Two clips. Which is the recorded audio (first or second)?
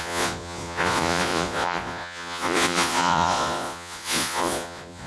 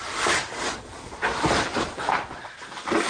second